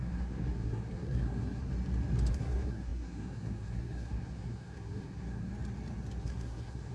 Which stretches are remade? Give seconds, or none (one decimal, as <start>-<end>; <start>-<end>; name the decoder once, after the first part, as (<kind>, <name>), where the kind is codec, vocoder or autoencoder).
0.0-1.7 (codec, SNAC); 2.3-5.5; 6.2-6.9